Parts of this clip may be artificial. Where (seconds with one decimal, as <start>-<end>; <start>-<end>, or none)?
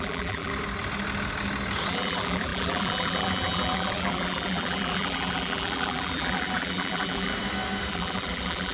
0.0-0.5; 1.9-7.3; 7.9-8.7